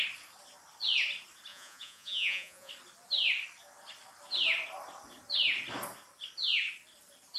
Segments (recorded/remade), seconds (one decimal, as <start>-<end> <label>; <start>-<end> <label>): 0.0-1.5 recorded; 1.5-2.7 remade; 2.7-7.4 recorded